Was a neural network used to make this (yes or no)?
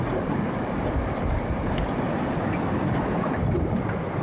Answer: yes